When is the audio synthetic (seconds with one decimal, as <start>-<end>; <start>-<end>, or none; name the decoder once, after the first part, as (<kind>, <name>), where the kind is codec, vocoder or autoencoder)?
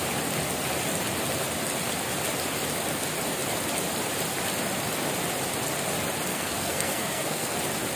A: 6.3-7.6 (codec, SNAC)